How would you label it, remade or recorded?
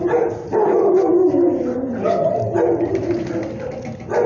recorded